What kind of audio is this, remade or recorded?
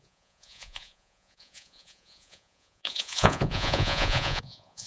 remade